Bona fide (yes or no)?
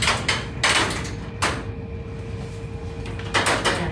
yes